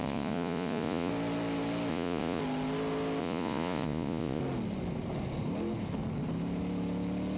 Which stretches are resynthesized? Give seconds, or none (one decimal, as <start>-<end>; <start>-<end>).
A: 0.0-1.1; 1.9-2.4; 3.2-4.4